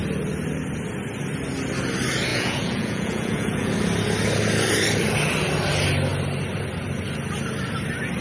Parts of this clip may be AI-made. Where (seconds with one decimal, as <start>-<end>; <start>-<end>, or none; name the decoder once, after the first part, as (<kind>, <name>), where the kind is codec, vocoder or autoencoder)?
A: 2.3-3.7 (vocoder, Vocos)

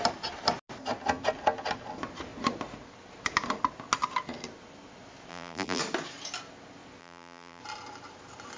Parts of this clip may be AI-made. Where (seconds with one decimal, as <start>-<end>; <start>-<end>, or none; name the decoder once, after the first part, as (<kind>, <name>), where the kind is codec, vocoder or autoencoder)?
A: 5.3-5.8 (vocoder, BigVGAN v2); 7.0-7.6

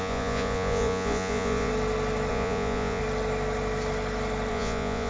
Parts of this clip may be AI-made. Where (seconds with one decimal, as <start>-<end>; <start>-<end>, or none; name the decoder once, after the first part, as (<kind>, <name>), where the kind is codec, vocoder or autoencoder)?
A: 0.0-1.7 (vocoder, Vocos); 2.3-3.0; 4.5-5.1

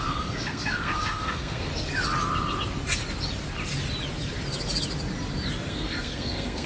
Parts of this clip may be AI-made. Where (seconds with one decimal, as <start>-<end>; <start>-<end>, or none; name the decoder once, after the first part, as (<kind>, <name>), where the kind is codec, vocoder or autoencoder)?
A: 0.0-1.7 (codec, SNAC); 5.7-6.7